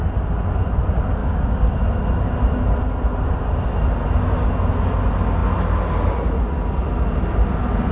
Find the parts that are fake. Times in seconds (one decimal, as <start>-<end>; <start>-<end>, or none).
1.2-1.8